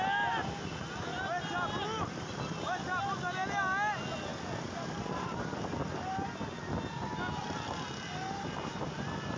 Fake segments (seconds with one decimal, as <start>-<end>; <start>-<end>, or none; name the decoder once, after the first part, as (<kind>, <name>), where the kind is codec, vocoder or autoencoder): 1.1-2.2 (vocoder, BigVGAN v2)